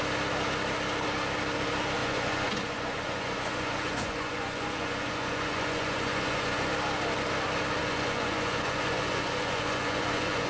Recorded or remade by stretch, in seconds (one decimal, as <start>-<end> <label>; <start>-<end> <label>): 0.0-2.0 recorded; 2.0-6.7 remade; 6.7-7.8 recorded; 7.8-10.5 remade